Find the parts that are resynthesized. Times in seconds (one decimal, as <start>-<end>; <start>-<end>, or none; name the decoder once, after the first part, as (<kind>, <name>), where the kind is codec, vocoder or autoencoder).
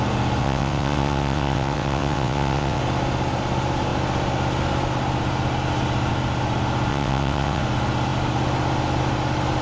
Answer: 0.4-2.8 (vocoder, WaveNeXt); 6.9-7.6